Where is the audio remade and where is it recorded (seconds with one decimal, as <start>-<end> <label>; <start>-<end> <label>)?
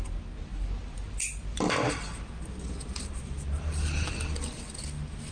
0.0-5.3 recorded